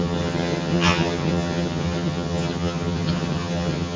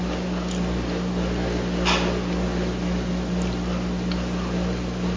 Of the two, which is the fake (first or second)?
first